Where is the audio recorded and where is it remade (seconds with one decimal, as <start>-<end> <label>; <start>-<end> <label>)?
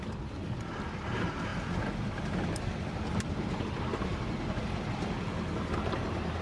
0.0-1.5 recorded; 1.5-2.9 remade; 2.9-6.4 recorded